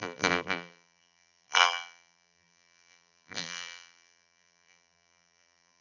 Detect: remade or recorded remade